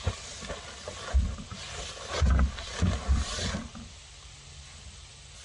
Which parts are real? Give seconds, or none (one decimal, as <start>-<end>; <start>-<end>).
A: 0.0-5.4